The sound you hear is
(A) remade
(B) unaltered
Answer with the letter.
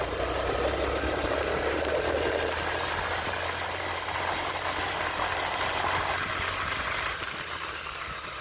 B